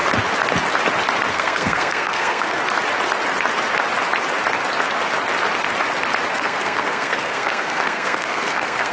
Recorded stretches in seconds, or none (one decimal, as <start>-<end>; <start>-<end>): 0.0-1.3; 2.6-6.3